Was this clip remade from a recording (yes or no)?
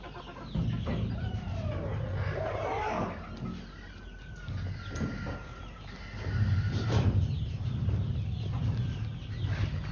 no